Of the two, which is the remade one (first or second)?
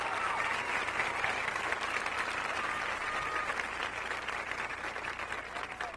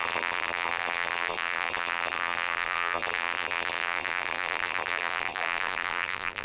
second